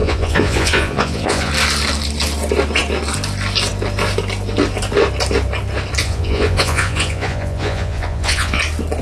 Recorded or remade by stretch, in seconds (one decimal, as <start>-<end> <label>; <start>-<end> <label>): 0.0-1.5 remade; 1.5-6.0 recorded; 6.0-8.6 remade; 8.6-9.0 recorded